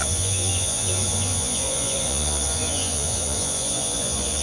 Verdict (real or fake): fake